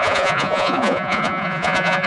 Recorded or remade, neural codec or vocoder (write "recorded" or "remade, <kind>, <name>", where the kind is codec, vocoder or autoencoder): remade, vocoder, Vocos